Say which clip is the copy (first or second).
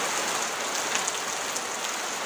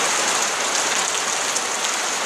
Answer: second